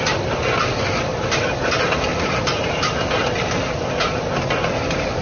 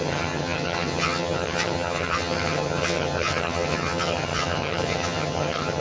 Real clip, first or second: first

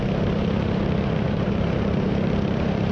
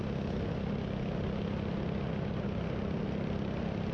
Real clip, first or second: second